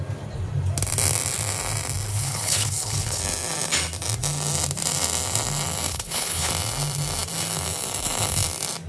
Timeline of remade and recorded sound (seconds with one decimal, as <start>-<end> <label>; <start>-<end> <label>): 0.0-2.1 recorded; 2.1-3.2 remade; 3.2-5.9 recorded; 5.9-6.5 remade; 6.5-8.9 recorded